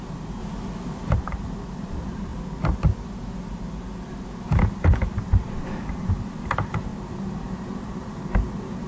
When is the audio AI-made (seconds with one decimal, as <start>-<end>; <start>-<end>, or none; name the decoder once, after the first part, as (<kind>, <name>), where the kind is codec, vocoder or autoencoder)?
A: 0.0-0.4 (vocoder, BigVGAN v2); 1.1-2.3; 4.7-8.9